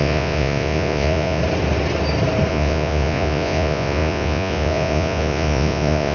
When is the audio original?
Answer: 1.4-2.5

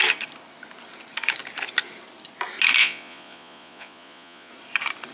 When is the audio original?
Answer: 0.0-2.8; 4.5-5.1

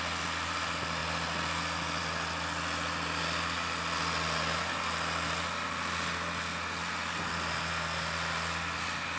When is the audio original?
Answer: 0.0-9.2

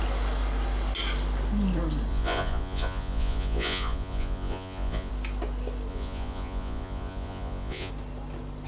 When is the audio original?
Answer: 0.0-2.1; 5.1-5.9; 7.9-8.7